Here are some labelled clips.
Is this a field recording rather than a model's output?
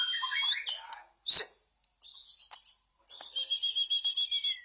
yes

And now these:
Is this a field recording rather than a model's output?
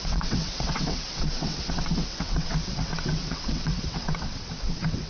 no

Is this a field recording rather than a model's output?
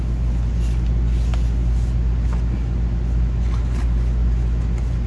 yes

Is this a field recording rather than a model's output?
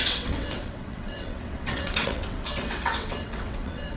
no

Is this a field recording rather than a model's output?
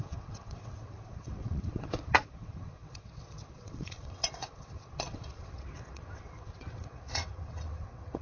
no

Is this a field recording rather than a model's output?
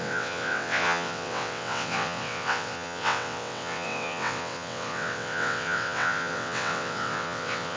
no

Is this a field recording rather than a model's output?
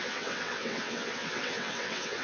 no